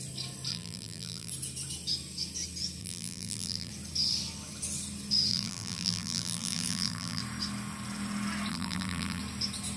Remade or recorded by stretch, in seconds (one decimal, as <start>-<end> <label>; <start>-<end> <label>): 0.0-0.5 recorded; 0.5-1.3 remade; 1.3-2.8 recorded; 2.8-3.7 remade; 3.7-5.3 recorded; 5.3-7.2 remade; 7.2-8.5 recorded; 8.5-9.2 remade; 9.2-9.8 recorded